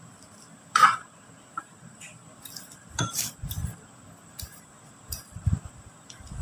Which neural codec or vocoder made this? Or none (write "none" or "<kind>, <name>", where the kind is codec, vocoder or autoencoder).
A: vocoder, BigVGAN v2